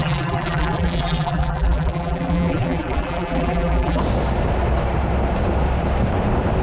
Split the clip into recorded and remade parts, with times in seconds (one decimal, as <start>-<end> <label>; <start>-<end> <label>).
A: 0.0-4.0 remade; 4.0-6.6 recorded